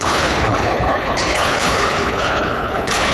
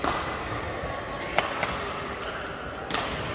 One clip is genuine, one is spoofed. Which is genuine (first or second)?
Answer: second